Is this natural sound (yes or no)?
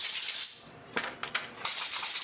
no